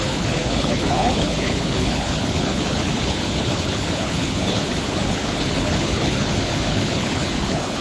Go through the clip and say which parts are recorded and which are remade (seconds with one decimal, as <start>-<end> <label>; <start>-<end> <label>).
0.0-7.8 remade